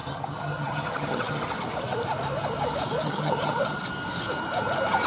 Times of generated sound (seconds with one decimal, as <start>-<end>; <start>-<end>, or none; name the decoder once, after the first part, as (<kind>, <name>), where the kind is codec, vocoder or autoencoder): 0.0-1.4 (vocoder, HiFi-GAN); 3.0-3.8